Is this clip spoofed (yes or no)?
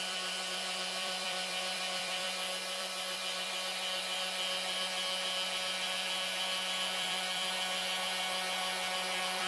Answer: yes